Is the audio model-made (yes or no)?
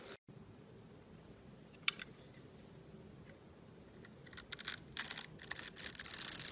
no